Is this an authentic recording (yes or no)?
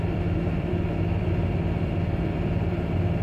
no